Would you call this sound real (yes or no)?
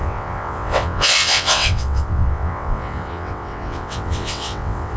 no